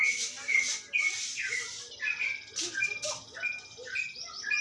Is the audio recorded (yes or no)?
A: yes